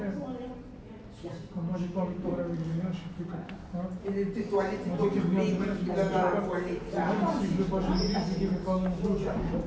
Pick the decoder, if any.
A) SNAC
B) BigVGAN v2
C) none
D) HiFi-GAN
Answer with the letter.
C